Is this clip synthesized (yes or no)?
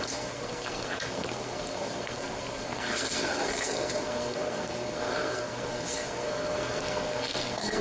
yes